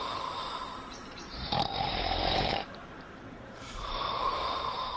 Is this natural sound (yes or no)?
no